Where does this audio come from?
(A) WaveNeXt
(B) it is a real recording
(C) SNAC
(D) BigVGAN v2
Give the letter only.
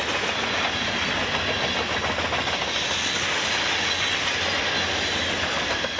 B